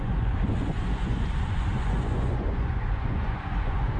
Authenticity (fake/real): fake